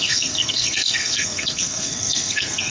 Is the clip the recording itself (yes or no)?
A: no